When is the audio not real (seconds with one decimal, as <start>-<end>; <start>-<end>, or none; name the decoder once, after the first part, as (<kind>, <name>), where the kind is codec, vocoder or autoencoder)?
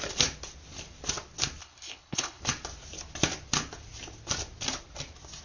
1.6-2.4 (codec, HILCodec)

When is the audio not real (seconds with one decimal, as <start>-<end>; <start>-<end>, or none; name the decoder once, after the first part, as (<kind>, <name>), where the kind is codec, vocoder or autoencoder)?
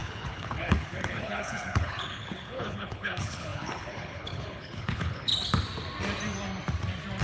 0.0-5.3 (codec, HILCodec)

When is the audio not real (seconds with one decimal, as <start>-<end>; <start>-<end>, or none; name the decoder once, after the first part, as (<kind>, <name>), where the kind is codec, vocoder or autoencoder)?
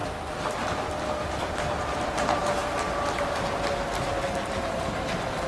none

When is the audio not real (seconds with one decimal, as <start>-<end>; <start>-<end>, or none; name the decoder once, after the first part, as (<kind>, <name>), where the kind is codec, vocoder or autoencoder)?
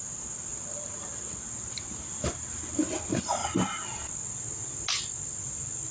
none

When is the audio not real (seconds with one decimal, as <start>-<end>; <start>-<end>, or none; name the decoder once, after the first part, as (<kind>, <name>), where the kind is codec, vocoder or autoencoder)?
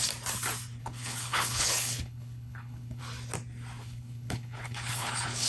0.8-3.0 (codec, HILCodec); 3.8-5.5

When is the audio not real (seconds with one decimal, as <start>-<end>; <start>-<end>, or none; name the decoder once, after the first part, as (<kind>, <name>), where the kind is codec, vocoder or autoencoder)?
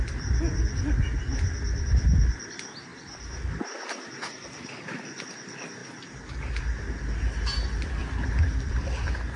none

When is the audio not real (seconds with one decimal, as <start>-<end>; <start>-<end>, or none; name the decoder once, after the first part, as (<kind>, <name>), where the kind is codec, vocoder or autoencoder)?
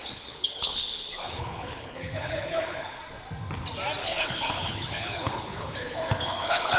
0.0-3.0 (codec, HILCodec); 4.0-6.8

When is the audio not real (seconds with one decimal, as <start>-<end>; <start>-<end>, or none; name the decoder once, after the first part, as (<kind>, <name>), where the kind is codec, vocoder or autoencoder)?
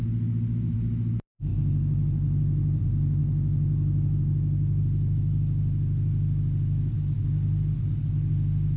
none